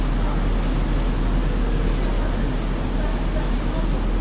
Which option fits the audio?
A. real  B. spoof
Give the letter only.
A